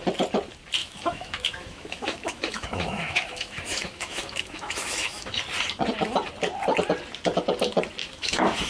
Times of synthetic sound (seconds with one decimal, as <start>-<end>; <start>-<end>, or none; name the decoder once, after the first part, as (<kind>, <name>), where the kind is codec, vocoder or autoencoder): 0.8-5.4 (autoencoder, DAC-VAE); 8.0-8.7